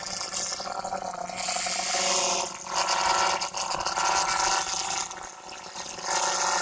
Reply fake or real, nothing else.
real